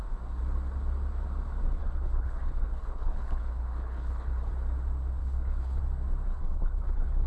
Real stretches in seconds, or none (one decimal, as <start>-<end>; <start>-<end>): 0.0-1.8; 4.5-5.2; 5.8-6.3